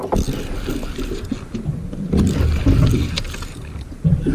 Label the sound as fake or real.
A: real